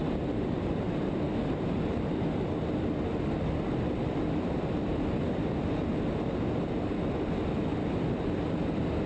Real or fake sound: real